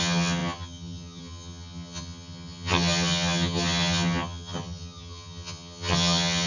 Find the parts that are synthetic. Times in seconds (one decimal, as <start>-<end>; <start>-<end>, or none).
0.0-6.5